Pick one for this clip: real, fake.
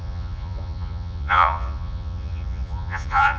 fake